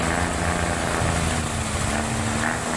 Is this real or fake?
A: real